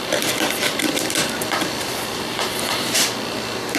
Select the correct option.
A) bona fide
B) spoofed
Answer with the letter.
A